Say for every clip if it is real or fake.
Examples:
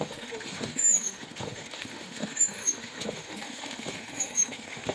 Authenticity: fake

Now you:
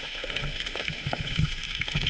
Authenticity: fake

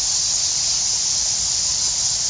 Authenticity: real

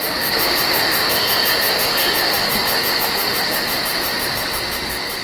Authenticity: fake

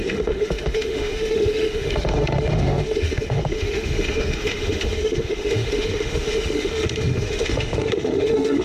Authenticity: fake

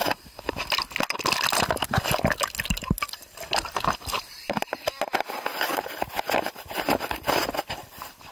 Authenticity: real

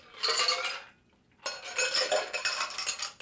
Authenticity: real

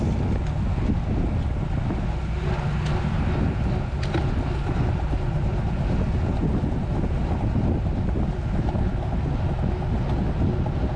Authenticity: real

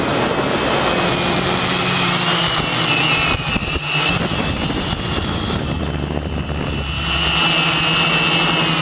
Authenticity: real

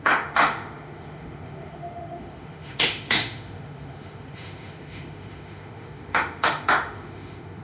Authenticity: fake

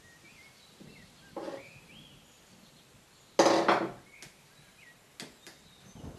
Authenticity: real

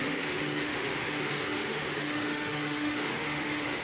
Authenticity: fake